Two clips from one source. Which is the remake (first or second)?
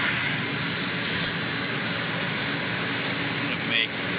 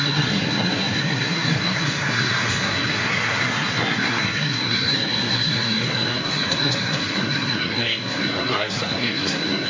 second